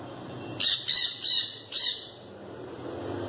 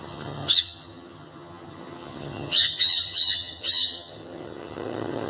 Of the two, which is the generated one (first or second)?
second